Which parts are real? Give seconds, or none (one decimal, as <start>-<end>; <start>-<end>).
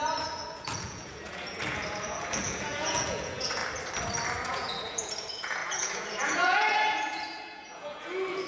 3.6-4.4